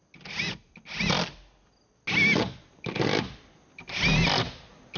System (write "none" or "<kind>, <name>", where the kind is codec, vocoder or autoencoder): none